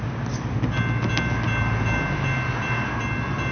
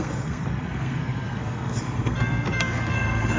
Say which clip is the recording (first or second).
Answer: first